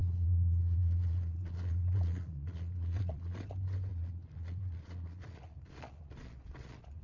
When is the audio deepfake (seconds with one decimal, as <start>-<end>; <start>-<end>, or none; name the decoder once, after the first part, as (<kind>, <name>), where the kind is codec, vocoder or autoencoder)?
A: 0.0-3.4 (vocoder, Vocos); 3.9-7.0